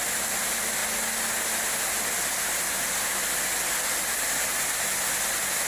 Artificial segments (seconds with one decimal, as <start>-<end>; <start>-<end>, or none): none